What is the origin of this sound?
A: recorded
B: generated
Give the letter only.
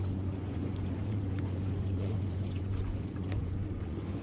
B